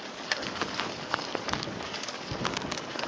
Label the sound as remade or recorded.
remade